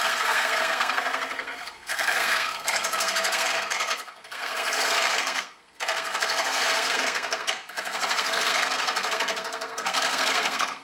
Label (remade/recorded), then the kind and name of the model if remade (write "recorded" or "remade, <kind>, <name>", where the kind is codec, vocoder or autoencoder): remade, codec, SNAC